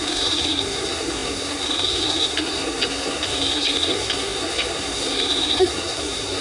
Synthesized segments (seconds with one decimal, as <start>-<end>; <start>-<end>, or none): 0.0-6.4